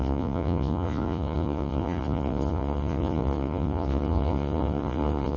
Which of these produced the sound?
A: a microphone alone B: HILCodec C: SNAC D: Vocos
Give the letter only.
D